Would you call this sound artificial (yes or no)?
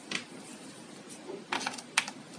no